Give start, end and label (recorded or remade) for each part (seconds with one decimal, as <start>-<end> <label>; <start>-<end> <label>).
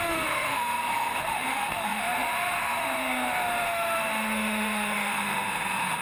0.0-6.0 remade